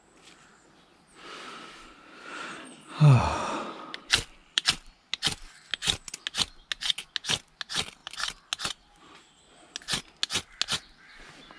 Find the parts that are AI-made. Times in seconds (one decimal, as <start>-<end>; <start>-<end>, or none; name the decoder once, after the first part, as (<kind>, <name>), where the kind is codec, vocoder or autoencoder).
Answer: 0.5-3.4 (vocoder, BigVGAN v2); 4.4-4.9